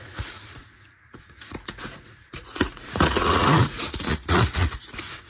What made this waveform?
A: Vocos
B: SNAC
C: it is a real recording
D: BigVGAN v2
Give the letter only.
A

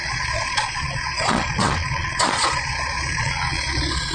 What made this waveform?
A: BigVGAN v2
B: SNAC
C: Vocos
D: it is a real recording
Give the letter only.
C